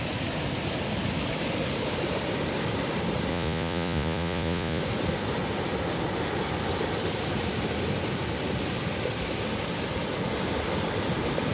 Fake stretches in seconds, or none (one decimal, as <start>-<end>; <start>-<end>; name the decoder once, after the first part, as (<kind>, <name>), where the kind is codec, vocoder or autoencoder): 3.3-4.8 (vocoder, Vocos)